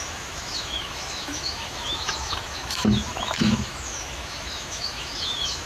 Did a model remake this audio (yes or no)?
yes